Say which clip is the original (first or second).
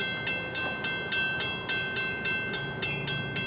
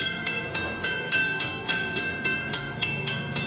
first